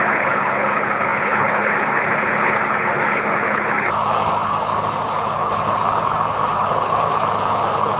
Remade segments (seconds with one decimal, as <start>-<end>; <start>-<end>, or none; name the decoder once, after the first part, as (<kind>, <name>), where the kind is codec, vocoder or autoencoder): 0.0-8.0 (codec, HILCodec)

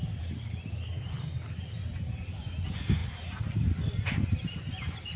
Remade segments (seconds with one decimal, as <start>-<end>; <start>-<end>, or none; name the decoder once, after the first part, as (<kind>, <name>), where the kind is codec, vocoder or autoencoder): none

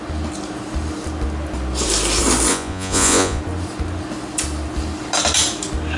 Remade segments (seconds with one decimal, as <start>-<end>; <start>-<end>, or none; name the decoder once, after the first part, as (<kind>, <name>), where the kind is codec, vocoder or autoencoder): 2.5-3.4 (vocoder, Vocos)